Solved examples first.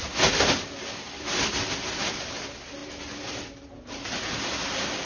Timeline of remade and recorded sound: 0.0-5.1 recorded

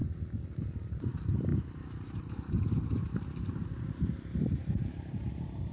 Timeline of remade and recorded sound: 0.0-1.0 recorded; 1.0-5.7 remade

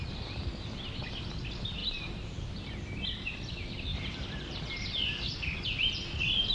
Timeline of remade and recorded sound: 0.0-1.8 recorded; 1.8-2.7 remade; 2.7-3.9 recorded; 3.9-5.0 remade; 5.0-6.5 recorded

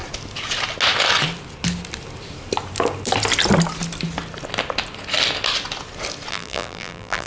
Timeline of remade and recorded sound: 0.0-6.3 recorded; 6.3-7.3 remade

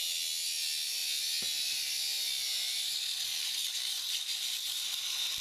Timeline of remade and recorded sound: 0.0-5.4 recorded

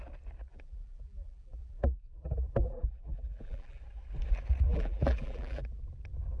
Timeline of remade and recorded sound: 0.0-0.5 recorded; 0.5-3.8 remade; 3.8-4.7 recorded; 4.7-5.8 remade; 5.8-6.4 recorded